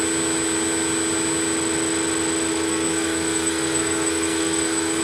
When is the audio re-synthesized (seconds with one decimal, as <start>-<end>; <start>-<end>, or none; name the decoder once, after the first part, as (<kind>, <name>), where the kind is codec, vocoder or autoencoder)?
2.5-5.0 (codec, SNAC)